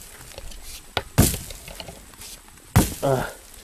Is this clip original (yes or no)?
yes